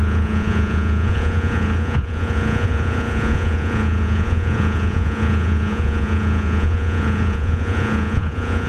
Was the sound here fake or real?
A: fake